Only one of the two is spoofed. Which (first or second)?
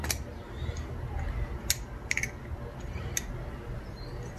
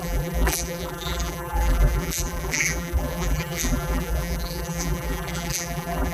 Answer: second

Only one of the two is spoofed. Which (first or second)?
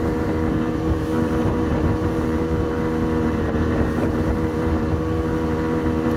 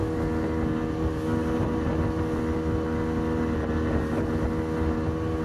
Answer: first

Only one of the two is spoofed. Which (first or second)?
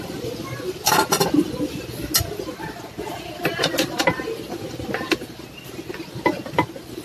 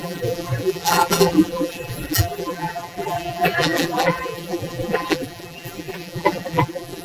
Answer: second